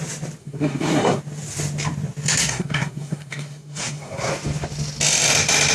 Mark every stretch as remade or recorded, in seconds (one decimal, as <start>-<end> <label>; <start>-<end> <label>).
0.0-0.4 recorded; 0.4-1.2 remade; 1.2-2.4 recorded; 2.4-4.3 remade; 4.3-5.7 recorded